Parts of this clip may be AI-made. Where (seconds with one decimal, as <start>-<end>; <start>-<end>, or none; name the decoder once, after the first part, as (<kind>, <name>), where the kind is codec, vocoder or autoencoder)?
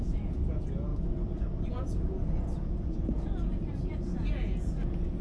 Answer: 0.0-0.9 (vocoder, Vocos); 1.7-5.2